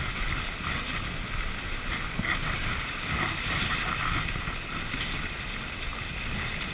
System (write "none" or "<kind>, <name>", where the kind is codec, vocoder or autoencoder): none